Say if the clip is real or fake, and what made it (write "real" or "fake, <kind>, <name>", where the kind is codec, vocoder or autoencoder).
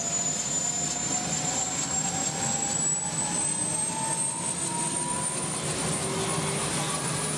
real